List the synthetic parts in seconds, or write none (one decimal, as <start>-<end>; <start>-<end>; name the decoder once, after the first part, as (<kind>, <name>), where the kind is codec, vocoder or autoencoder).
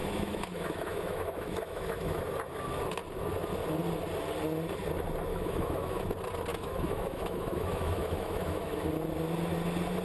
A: 0.0-2.2 (autoencoder, DAC-VAE); 5.3-6.1; 6.5-8.9